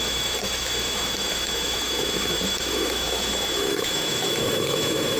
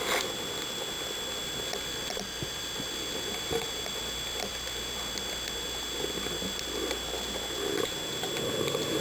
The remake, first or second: first